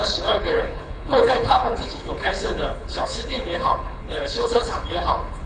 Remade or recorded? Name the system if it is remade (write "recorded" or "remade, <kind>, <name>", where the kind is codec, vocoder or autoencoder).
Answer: remade, codec, HILCodec